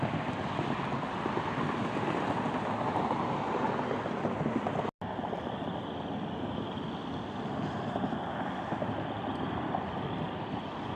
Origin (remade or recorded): recorded